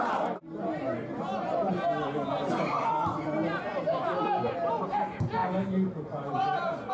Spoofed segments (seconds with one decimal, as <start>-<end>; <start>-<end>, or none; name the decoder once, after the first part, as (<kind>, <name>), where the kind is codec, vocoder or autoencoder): none